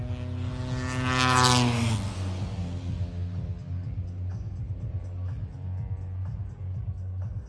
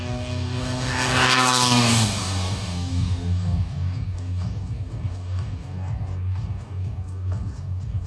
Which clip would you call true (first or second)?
first